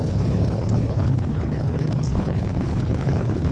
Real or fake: fake